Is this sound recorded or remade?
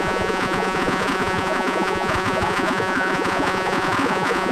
remade